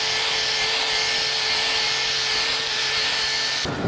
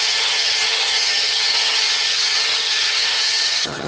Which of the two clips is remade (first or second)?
second